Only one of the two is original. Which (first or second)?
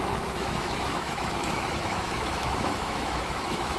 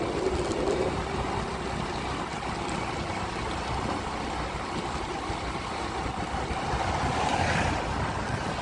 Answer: second